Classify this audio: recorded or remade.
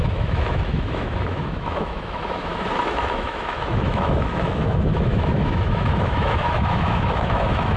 remade